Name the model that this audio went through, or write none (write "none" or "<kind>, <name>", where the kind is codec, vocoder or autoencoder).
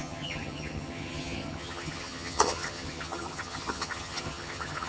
vocoder, HiFi-GAN